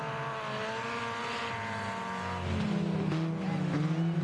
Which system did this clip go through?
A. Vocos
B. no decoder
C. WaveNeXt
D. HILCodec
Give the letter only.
B